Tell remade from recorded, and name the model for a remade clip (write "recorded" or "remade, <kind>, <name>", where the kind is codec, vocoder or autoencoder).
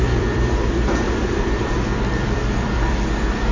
remade, vocoder, BigVGAN v2